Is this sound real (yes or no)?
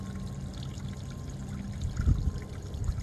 yes